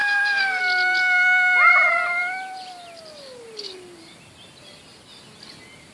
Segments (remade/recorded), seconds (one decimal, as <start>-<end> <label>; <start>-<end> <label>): 0.0-0.6 remade; 0.6-5.9 recorded